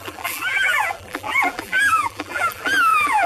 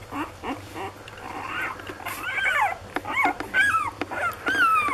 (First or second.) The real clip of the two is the second